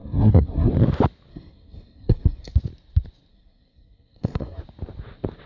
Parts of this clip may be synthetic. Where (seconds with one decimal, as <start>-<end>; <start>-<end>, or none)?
0.0-0.7; 1.3-2.5; 3.3-4.6